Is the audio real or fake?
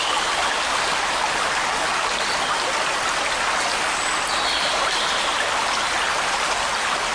real